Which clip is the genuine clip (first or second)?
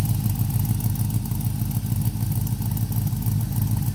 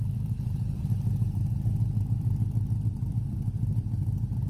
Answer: first